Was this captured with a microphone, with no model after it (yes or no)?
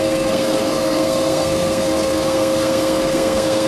no